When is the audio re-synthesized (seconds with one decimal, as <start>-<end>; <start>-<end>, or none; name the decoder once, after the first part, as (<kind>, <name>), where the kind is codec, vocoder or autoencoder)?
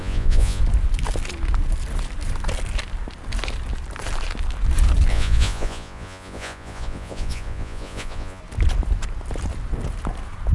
0.0-0.6 (vocoder, Vocos); 5.1-8.4